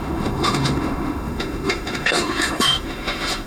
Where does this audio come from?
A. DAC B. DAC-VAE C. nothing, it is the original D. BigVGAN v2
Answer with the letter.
B